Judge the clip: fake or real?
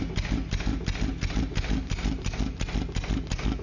real